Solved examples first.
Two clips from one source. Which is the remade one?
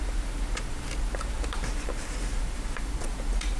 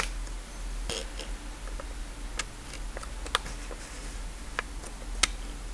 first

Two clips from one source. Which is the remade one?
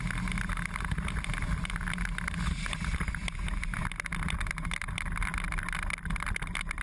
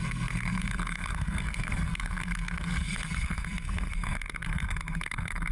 second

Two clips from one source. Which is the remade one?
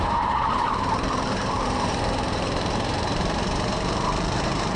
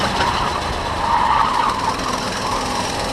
first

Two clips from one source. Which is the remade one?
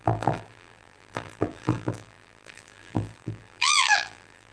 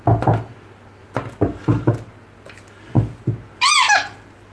first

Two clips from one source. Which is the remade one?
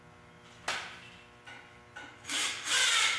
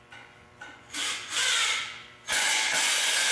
second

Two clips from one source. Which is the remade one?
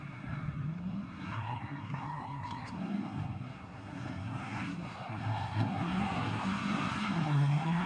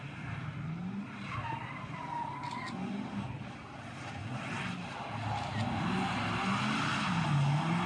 first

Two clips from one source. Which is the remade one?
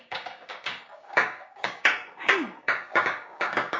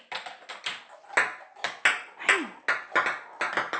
first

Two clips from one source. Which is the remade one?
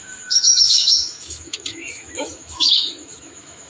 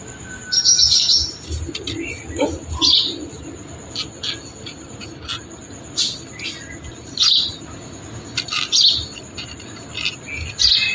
first